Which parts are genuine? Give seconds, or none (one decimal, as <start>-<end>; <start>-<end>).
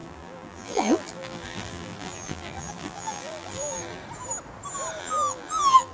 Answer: 4.0-5.0